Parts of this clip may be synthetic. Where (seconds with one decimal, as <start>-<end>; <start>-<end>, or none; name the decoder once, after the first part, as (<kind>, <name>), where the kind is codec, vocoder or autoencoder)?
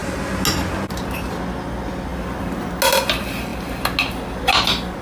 2.1-2.7 (vocoder, BigVGAN v2)